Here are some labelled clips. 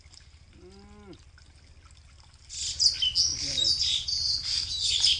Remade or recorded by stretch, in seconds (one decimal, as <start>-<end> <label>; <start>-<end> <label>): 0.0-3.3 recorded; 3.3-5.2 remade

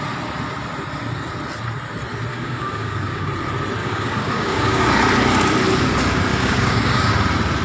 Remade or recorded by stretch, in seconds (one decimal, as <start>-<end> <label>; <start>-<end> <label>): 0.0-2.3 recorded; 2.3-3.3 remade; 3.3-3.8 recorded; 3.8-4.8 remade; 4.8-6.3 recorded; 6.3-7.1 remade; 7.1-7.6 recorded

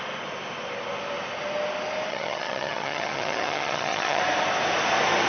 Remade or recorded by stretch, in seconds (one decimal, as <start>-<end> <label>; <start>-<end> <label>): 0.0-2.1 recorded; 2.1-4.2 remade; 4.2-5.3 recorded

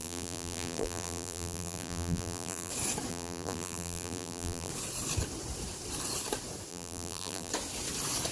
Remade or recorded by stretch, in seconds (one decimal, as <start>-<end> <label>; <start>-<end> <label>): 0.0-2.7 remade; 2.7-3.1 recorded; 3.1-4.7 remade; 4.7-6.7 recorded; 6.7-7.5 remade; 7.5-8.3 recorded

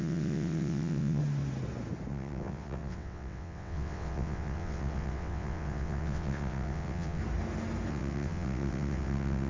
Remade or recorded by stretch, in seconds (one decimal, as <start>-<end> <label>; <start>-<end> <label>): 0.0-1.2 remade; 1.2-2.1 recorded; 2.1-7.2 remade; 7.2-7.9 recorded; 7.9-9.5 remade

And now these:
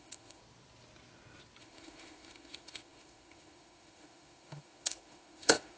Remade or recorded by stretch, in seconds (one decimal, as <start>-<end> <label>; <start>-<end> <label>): 0.0-0.4 remade; 0.4-1.6 recorded; 1.6-5.8 remade

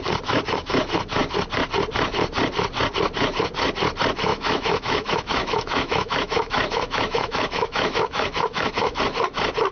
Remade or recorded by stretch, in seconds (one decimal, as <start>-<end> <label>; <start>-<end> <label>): 0.0-4.3 recorded; 4.3-9.0 remade; 9.0-9.7 recorded

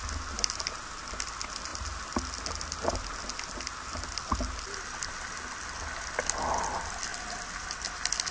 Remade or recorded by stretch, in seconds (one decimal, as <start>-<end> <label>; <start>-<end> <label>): 0.0-8.3 recorded